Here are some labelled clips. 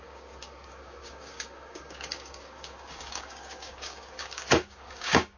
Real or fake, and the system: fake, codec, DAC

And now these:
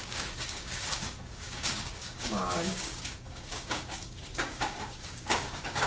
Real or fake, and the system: fake, codec, DAC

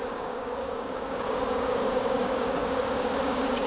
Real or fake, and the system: fake, codec, DAC